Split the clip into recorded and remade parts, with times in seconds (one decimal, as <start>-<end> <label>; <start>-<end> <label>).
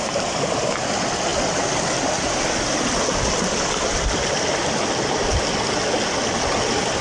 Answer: 0.0-7.0 recorded